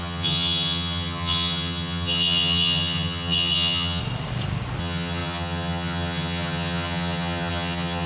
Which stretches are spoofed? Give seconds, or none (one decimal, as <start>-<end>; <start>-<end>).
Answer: 0.0-4.0; 4.8-8.1